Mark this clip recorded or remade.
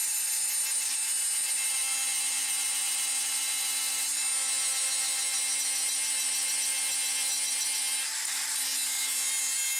recorded